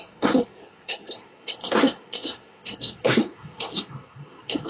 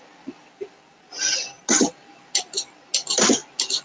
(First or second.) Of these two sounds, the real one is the second